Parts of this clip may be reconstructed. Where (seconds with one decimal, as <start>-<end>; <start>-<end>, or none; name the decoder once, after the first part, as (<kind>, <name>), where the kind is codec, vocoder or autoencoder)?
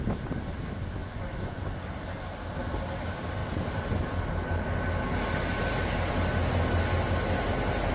1.0-1.6 (vocoder, Vocos)